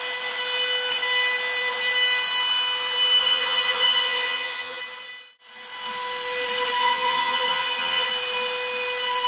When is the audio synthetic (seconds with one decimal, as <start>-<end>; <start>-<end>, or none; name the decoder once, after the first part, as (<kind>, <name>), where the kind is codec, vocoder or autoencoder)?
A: 3.2-4.8 (vocoder, HiFi-GAN); 6.8-8.1